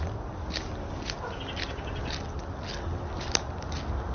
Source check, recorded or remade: recorded